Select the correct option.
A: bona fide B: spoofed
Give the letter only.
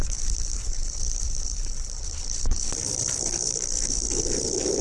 B